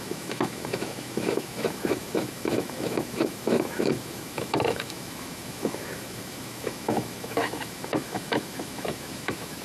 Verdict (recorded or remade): remade